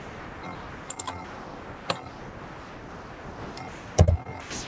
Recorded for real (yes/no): yes